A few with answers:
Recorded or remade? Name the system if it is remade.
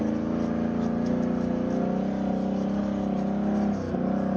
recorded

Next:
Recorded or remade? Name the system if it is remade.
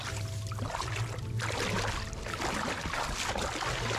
recorded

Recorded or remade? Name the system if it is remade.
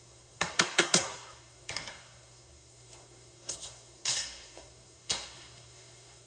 remade, codec, SNAC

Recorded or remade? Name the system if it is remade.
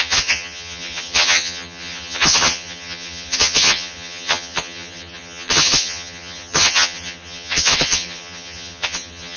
remade, vocoder, HiFi-GAN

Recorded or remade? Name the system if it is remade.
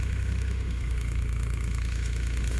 remade, autoencoder, DAC-VAE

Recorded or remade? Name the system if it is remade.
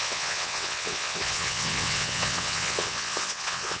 remade, vocoder, WaveNeXt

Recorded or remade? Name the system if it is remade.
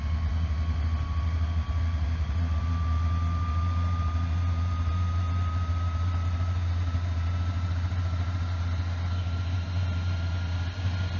recorded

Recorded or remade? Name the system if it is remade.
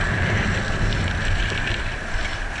recorded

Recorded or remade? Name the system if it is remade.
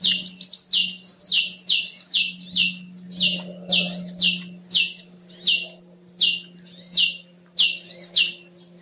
recorded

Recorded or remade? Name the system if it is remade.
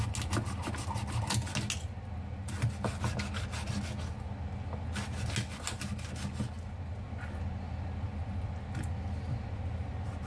recorded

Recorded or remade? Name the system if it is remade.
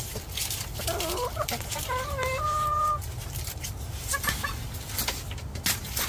recorded